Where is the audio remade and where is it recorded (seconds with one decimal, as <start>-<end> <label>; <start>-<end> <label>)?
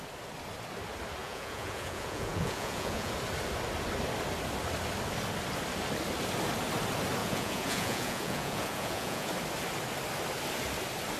0.0-1.2 recorded; 1.2-3.1 remade; 3.1-7.2 recorded; 7.2-9.3 remade; 9.3-11.2 recorded